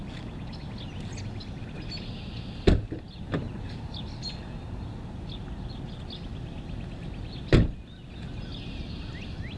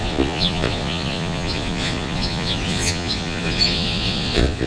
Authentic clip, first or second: first